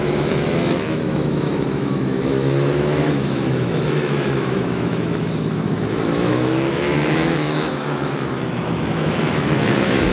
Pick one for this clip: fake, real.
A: fake